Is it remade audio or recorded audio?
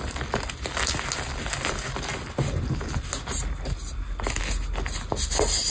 recorded